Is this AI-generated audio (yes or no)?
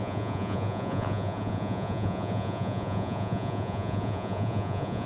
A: yes